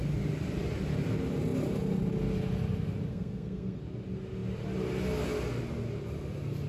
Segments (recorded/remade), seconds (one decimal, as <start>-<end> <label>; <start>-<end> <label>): 0.0-3.1 recorded; 3.1-3.8 remade; 3.8-6.7 recorded